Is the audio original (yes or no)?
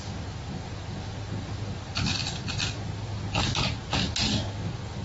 yes